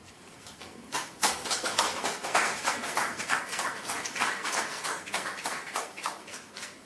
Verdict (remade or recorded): remade